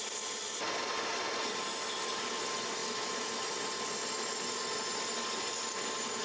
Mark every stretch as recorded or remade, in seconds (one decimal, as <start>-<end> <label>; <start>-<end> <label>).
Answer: 0.0-6.2 recorded